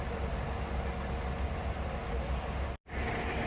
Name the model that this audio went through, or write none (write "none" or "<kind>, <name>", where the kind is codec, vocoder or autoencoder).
none